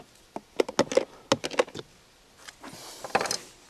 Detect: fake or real real